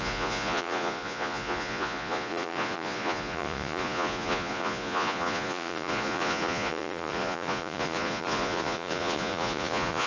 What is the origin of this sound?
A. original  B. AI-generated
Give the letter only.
B